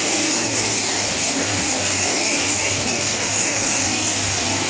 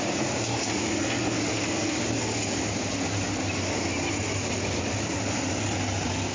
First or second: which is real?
second